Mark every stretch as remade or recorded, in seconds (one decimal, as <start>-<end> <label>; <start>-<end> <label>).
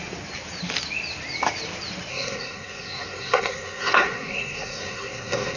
0.0-2.1 recorded; 2.1-5.6 remade